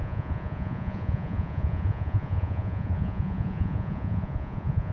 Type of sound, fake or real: fake